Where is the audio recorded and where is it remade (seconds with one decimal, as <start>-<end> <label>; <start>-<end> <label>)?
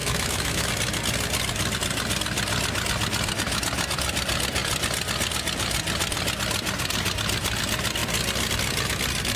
0.0-0.7 remade; 0.7-9.4 recorded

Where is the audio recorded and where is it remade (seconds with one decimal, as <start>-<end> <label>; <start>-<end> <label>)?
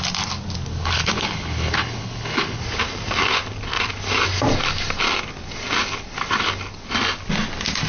0.0-0.7 recorded; 0.7-2.6 remade; 2.6-7.9 recorded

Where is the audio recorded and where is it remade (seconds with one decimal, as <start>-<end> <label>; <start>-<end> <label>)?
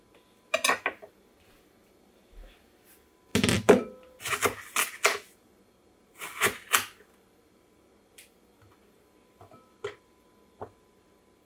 0.0-11.4 recorded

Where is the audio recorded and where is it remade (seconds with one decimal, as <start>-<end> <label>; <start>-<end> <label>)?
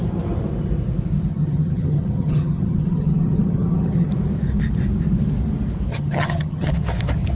0.0-1.3 recorded; 1.3-4.1 remade; 4.1-5.9 recorded; 5.9-6.7 remade; 6.7-7.3 recorded